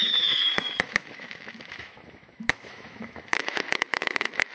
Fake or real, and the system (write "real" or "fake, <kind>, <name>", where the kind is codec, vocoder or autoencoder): fake, autoencoder, DAC-VAE